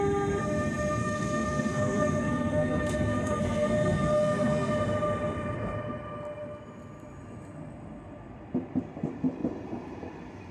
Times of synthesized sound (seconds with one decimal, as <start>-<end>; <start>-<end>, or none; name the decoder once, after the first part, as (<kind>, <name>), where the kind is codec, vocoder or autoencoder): 1.0-4.7 (codec, SNAC)

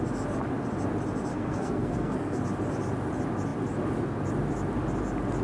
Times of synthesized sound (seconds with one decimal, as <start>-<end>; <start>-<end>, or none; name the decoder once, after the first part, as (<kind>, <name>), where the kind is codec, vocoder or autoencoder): 1.3-2.4 (codec, SNAC)

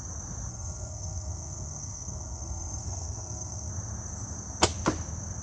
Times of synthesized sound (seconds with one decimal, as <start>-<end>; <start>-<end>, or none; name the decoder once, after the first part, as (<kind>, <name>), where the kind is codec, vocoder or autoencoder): 0.5-3.7 (codec, SNAC)

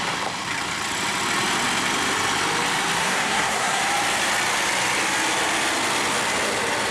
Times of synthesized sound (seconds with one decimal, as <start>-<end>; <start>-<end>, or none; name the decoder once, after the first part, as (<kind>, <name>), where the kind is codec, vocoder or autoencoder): 3.0-3.8 (codec, SNAC)

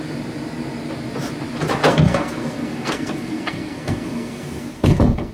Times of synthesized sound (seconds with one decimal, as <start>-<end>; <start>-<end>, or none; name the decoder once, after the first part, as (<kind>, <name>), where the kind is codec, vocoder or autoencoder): 1.8-5.3 (codec, SNAC)

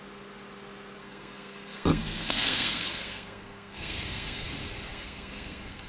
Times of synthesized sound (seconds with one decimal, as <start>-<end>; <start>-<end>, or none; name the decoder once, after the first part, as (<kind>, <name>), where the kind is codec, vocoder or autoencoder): 1.0-4.5 (codec, SNAC); 4.9-5.9

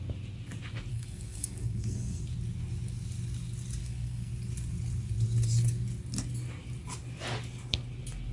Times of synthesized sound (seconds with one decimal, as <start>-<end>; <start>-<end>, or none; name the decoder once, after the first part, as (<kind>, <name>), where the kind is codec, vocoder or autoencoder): 0.9-2.2 (codec, SNAC); 3.8-4.3